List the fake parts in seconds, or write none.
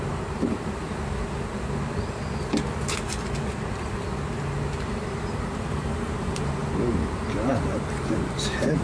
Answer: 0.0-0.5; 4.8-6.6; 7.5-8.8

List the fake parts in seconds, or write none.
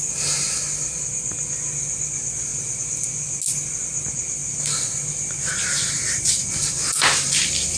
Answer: none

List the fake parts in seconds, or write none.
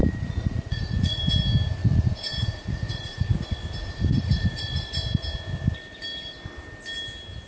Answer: 0.0-1.2; 1.8-3.3; 3.8-4.6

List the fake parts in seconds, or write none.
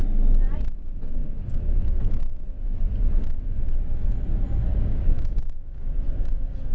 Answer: 4.7-6.0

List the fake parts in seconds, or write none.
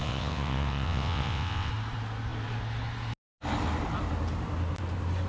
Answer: 0.0-1.7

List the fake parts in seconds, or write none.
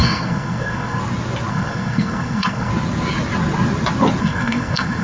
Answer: 0.0-1.0; 1.5-2.7; 4.2-5.0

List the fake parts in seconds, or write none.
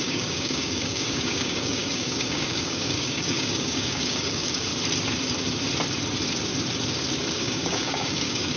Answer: 0.0-4.7; 7.3-8.6